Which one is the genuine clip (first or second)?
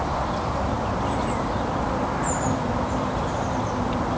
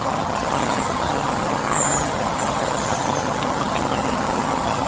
first